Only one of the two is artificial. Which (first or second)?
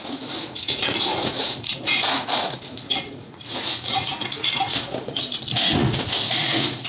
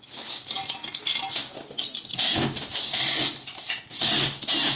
first